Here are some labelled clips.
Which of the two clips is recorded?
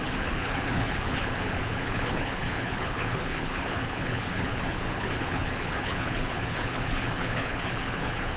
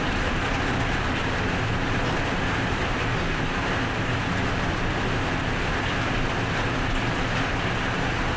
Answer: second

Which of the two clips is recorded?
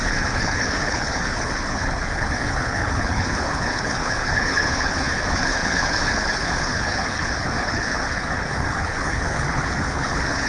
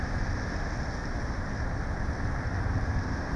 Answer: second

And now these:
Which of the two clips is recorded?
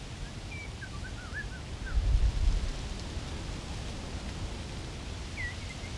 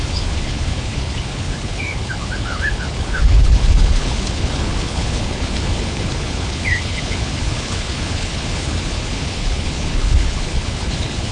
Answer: first